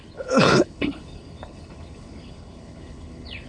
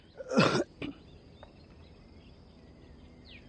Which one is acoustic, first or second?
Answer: second